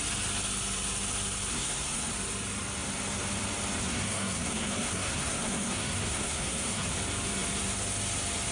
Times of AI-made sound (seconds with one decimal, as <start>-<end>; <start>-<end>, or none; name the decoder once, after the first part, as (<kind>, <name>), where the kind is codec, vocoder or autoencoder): 1.5-2.1 (codec, SNAC); 3.8-7.0